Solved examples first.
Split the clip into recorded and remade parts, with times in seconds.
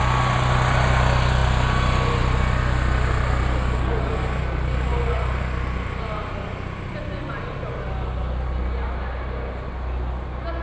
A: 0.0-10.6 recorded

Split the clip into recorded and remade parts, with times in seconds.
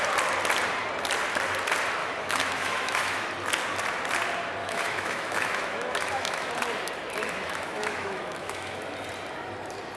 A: 0.0-2.0 recorded; 2.0-3.3 remade; 3.3-4.6 recorded; 4.6-6.5 remade; 6.5-7.2 recorded; 7.2-8.8 remade; 8.8-10.0 recorded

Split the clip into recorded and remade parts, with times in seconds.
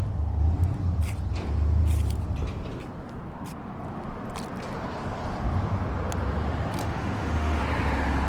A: 0.0-6.8 recorded; 6.8-7.6 remade; 7.6-8.3 recorded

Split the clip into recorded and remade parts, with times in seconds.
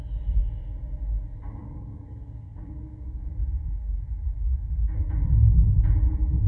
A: 0.0-1.6 recorded; 1.6-5.1 remade; 5.1-6.5 recorded